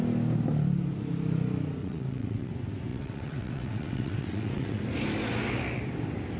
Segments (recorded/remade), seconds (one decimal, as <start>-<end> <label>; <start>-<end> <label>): 0.0-1.8 recorded; 1.8-2.5 remade; 2.5-2.9 recorded; 2.9-4.8 remade; 4.8-6.4 recorded